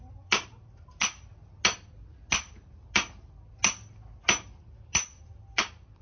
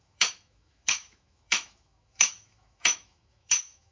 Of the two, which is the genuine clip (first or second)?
first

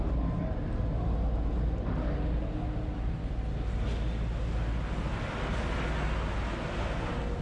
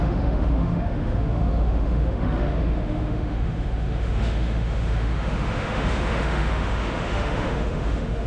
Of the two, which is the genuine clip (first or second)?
first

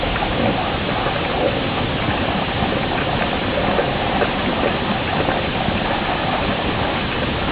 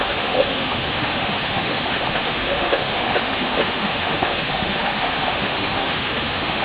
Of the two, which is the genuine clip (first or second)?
first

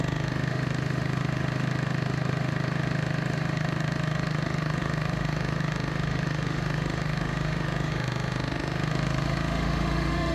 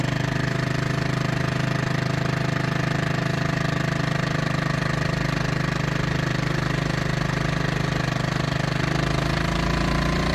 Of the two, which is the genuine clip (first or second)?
second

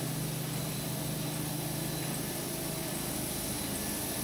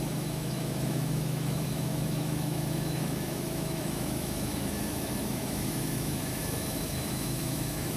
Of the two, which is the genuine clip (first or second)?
first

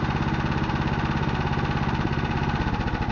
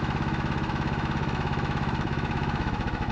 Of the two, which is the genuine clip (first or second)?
first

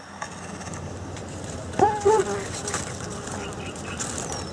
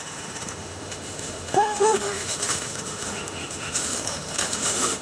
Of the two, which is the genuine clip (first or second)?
first